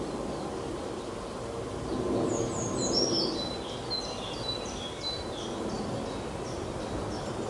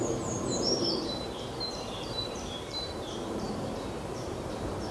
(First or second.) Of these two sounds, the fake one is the second